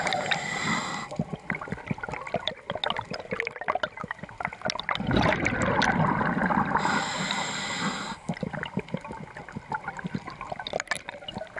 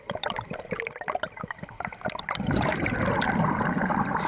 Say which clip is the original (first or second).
first